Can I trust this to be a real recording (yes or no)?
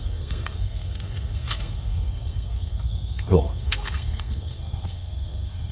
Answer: no